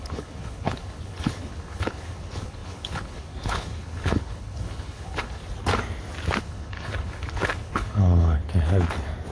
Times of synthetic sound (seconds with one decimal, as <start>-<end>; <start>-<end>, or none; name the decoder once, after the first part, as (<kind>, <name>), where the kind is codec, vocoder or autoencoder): 0.0-5.4 (codec, HILCodec); 6.4-8.4